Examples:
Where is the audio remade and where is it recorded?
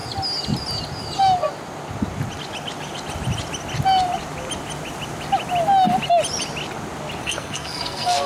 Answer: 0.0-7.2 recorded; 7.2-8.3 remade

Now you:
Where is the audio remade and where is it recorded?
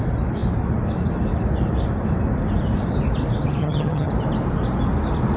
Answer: 0.0-3.6 recorded; 3.6-4.1 remade; 4.1-5.4 recorded